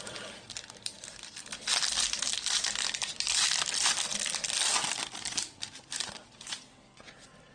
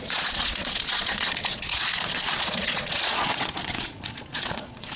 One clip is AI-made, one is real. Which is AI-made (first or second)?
second